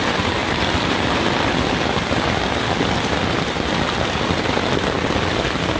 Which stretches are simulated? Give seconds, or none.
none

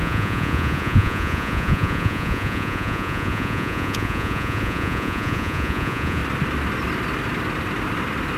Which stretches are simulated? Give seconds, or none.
0.0-6.2 (vocoder, Vocos)

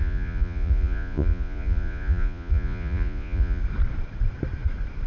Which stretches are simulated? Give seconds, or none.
0.0-3.6 (vocoder, Vocos)

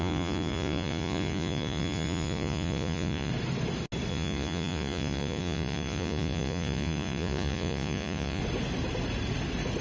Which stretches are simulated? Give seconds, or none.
0.0-3.3 (vocoder, Vocos); 4.1-8.4

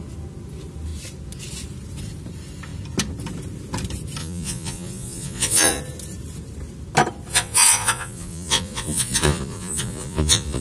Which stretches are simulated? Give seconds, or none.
4.2-5.8 (vocoder, Vocos); 7.3-10.6